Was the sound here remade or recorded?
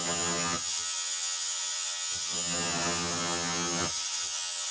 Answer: remade